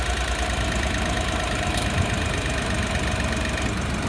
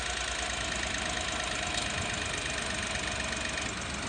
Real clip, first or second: second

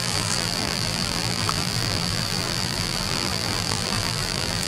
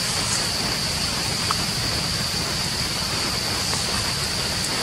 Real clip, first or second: second